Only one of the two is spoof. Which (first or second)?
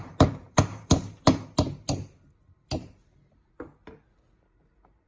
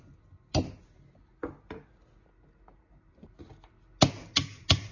first